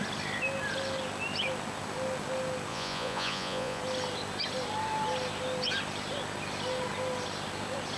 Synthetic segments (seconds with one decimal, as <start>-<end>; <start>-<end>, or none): 2.7-3.8